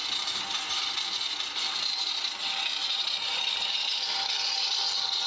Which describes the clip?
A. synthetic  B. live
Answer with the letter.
B